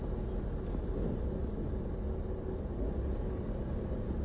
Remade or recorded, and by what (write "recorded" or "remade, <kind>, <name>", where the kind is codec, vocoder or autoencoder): recorded